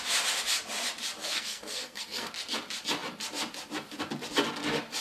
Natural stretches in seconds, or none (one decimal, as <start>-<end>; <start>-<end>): 0.0-1.2; 2.3-5.0